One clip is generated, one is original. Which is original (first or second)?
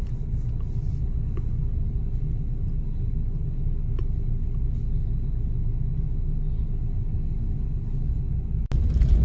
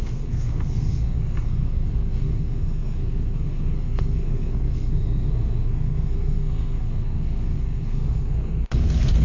first